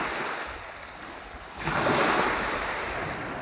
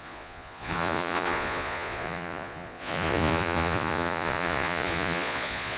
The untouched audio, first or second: first